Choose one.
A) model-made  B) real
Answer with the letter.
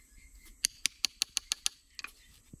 B